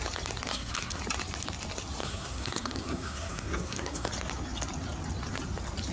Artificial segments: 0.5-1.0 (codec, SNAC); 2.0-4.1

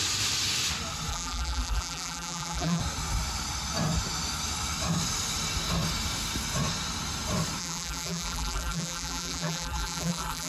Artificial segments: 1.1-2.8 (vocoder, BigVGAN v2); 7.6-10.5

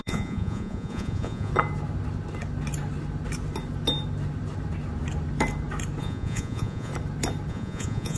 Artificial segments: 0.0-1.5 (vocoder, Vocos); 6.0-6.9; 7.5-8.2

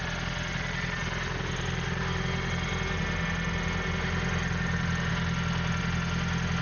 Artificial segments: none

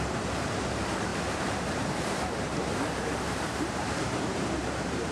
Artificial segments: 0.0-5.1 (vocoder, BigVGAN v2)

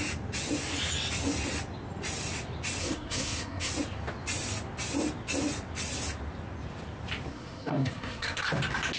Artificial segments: 2.8-3.7 (codec, SNAC); 7.3-8.4